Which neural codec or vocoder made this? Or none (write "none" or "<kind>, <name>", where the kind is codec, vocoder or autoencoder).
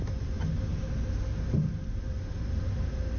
none